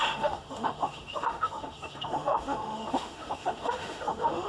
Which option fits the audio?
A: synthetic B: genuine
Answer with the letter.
A